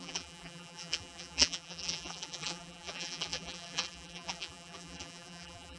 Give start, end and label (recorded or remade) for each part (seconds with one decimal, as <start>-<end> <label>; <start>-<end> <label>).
0.0-5.8 remade